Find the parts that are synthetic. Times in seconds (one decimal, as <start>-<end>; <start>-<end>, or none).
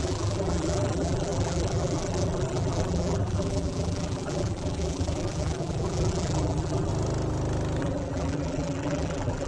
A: 0.0-6.9; 7.8-9.5